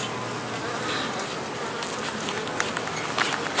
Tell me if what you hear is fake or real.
real